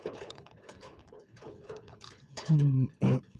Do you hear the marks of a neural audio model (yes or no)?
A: yes